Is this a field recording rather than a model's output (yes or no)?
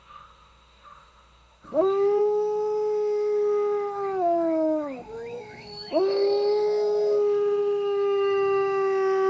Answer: no